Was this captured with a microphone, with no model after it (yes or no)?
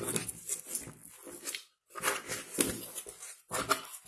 yes